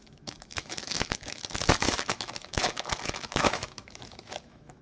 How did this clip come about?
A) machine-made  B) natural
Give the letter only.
A